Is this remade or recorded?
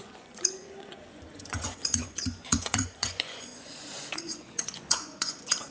remade